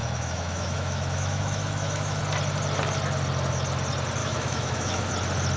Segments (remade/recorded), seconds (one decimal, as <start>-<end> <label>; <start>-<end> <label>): 0.0-2.2 remade; 2.2-4.2 recorded; 4.2-5.1 remade; 5.1-5.6 recorded